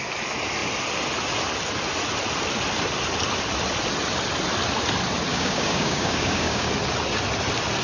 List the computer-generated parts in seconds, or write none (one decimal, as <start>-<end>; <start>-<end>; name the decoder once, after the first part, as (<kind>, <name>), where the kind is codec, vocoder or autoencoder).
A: 5.3-6.7 (codec, DAC)